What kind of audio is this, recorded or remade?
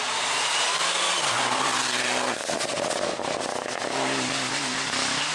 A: recorded